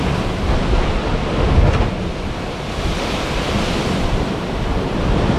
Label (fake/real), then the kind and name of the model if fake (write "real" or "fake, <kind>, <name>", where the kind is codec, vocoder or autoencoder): real